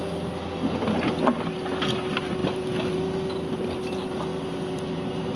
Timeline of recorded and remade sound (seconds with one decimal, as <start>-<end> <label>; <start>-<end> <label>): 0.0-5.4 recorded